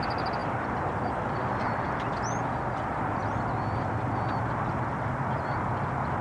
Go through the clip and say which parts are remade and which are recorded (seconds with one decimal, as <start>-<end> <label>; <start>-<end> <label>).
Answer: 0.0-6.2 recorded